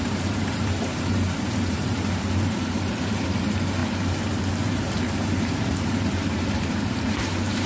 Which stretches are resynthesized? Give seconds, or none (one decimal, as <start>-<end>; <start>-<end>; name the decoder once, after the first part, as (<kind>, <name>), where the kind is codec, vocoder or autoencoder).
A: 0.0-7.7 (vocoder, BigVGAN v2)